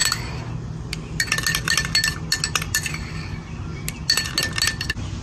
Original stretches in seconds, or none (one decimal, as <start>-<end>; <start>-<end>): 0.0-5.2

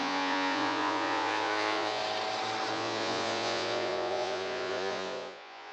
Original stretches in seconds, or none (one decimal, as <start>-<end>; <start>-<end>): 2.0-2.7

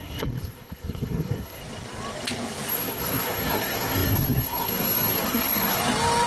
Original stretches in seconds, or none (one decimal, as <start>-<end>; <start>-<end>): 1.6-2.7; 5.8-6.3

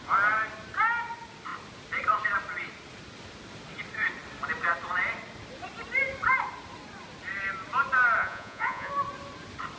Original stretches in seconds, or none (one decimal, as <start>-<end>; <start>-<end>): 0.0-8.2; 8.9-9.8

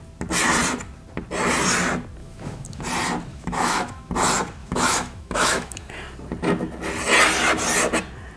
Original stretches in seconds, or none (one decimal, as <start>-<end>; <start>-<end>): 0.0-2.2; 2.8-3.3; 4.1-4.6; 5.9-8.4

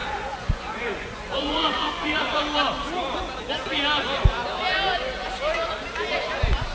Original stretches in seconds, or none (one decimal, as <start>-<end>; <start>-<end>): 2.2-6.7